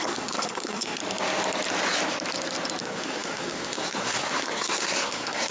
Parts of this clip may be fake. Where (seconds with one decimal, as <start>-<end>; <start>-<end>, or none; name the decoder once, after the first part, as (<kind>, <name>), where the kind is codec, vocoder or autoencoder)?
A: 0.0-1.0 (codec, SNAC); 2.8-5.5